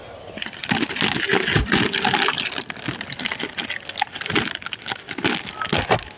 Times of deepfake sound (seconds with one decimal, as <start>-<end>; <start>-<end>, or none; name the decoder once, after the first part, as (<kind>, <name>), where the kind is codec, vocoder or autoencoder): none